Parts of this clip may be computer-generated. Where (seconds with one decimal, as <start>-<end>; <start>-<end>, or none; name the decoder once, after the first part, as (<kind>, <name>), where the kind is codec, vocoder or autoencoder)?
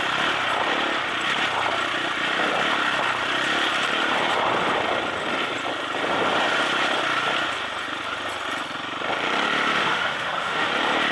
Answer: 9.8-10.7 (autoencoder, DAC-VAE)